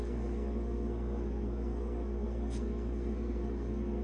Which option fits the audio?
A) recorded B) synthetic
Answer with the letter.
B